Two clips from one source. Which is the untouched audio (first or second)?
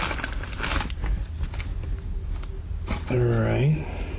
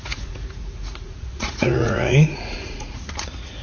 first